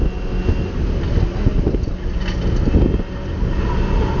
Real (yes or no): yes